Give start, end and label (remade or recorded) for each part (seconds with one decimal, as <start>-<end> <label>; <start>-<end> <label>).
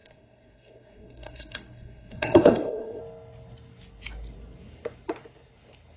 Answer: 0.0-3.0 remade; 3.0-6.0 recorded